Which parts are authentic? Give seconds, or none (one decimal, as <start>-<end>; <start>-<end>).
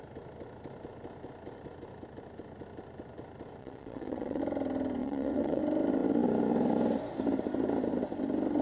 0.0-3.6; 4.4-5.0; 5.6-8.6